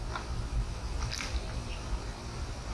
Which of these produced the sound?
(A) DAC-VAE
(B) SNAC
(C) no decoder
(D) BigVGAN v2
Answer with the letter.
C